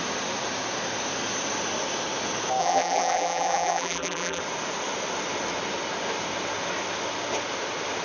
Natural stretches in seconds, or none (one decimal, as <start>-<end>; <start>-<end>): 0.0-2.6; 4.4-8.0